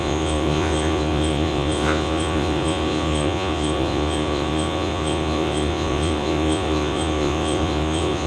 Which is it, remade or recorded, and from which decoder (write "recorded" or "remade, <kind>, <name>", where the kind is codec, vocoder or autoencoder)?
remade, vocoder, Vocos